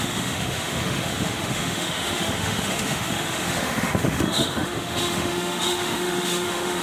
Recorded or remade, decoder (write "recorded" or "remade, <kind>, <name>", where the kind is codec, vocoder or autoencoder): remade, autoencoder, DAC-VAE